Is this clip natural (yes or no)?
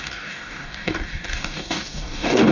no